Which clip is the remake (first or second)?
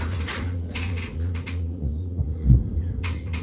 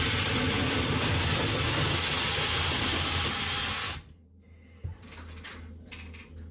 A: first